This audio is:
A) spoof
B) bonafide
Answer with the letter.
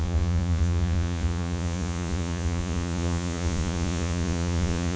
A